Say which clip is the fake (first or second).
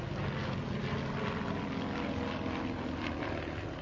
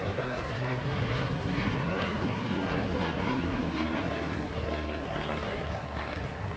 second